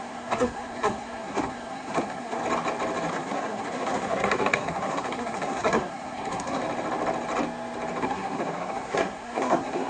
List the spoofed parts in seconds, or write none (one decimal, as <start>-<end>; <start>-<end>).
0.0-2.4; 3.1-6.6; 8.0-9.9